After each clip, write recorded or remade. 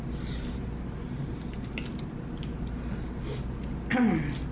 recorded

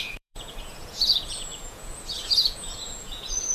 remade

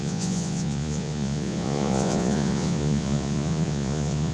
remade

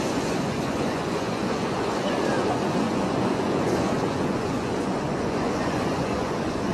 remade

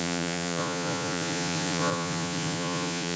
remade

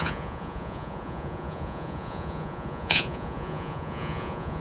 remade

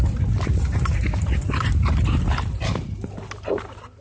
recorded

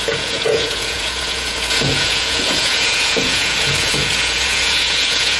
remade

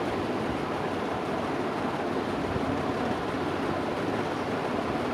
recorded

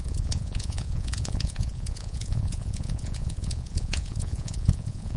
remade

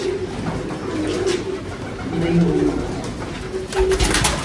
recorded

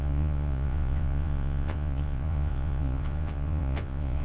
remade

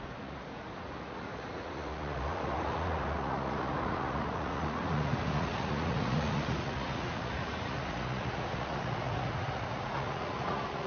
remade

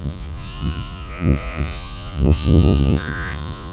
remade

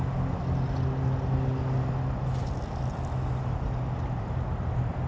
recorded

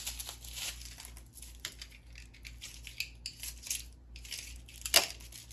recorded